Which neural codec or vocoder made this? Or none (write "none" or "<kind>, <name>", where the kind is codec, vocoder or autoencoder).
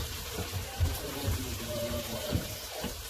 vocoder, BigVGAN v2